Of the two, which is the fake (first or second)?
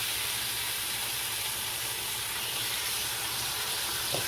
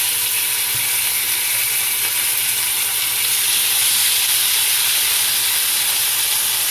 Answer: first